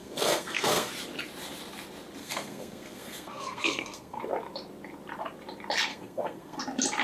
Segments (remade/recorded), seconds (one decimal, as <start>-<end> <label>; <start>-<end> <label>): 0.0-0.9 remade; 0.9-2.2 recorded; 2.2-4.2 remade; 4.2-5.9 recorded; 5.9-6.6 remade; 6.6-7.0 recorded